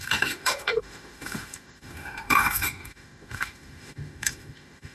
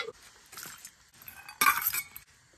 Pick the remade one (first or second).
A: first